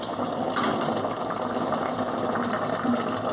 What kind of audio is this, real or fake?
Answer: fake